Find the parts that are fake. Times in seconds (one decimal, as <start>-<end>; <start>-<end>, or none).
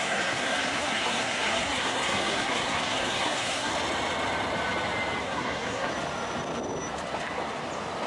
0.0-3.7; 5.2-5.9